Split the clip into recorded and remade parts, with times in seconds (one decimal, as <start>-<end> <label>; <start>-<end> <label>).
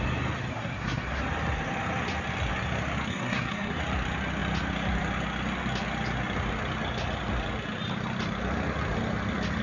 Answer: 0.0-0.5 recorded; 0.5-1.2 remade; 1.2-3.1 recorded; 3.1-3.8 remade; 3.8-9.6 recorded